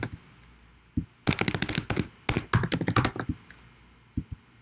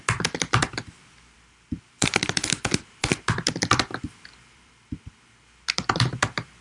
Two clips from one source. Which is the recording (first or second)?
first